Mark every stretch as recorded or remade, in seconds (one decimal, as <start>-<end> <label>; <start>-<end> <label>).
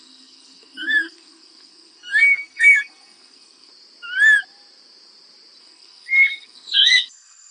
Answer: 0.0-3.7 remade; 3.7-5.6 recorded; 5.6-7.5 remade